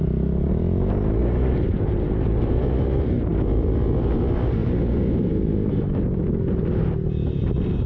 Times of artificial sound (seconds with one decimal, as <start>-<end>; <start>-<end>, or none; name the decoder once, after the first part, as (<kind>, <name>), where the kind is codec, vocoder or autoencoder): 1.2-2.6 (vocoder, BigVGAN v2)

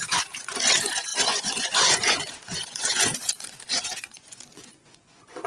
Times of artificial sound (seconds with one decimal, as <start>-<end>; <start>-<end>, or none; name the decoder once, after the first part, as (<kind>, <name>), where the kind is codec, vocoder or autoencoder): 0.0-5.5 (vocoder, Vocos)